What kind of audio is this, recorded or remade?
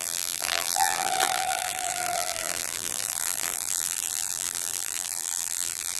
remade